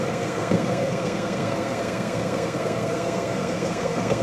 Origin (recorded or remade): remade